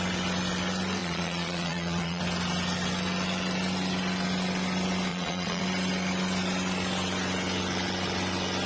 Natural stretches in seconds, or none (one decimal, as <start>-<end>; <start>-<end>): 0.0-1.0; 2.2-5.1; 5.6-8.7